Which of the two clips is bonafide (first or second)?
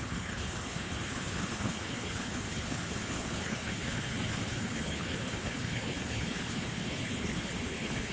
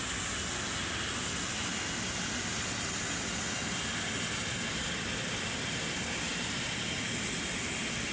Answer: second